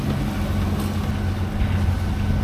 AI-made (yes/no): no